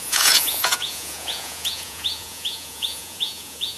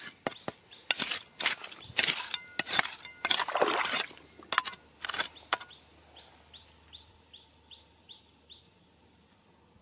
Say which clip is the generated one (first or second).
first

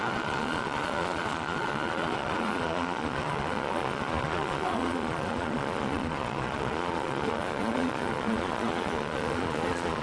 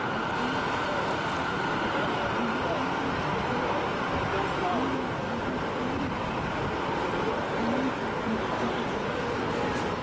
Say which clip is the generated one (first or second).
first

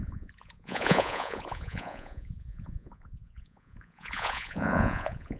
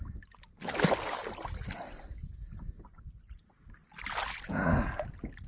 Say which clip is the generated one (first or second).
first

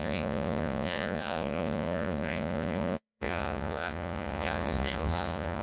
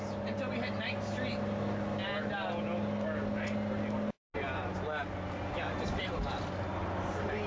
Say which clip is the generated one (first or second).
first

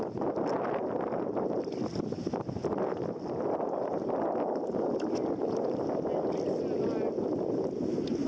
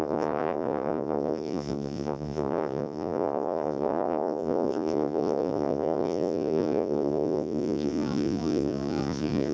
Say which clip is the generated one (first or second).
second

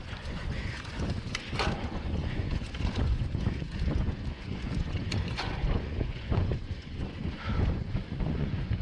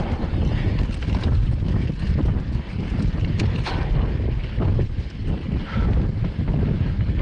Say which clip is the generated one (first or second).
first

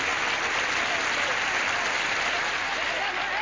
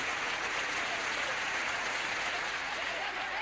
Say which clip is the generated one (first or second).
second